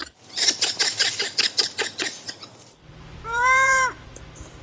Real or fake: fake